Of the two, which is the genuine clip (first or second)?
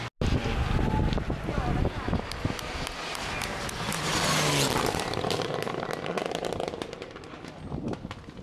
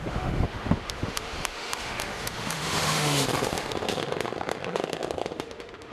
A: first